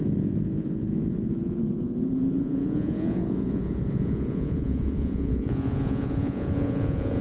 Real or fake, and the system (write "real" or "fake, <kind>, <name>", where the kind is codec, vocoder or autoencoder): fake, vocoder, Vocos